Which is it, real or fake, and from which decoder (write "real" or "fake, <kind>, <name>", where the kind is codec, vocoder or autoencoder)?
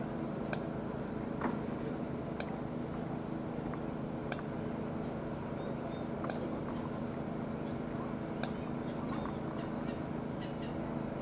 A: real